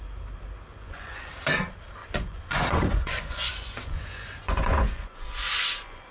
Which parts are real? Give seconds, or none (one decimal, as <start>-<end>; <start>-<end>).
0.0-0.7; 1.3-2.0